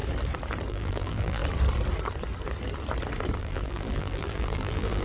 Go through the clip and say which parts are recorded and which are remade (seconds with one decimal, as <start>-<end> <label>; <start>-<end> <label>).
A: 0.0-0.7 recorded; 0.7-1.4 remade; 1.4-3.4 recorded; 3.4-5.0 remade